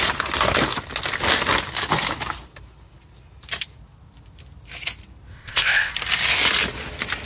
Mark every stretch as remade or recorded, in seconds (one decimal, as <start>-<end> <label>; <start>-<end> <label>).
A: 0.0-5.3 recorded; 5.3-5.9 remade; 5.9-7.3 recorded